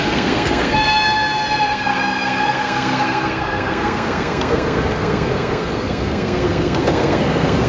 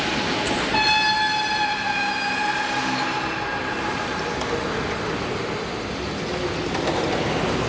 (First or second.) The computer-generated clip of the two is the first